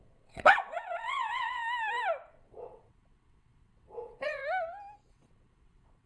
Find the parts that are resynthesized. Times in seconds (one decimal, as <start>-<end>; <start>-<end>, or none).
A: 0.0-1.6; 2.3-4.4; 5.1-6.1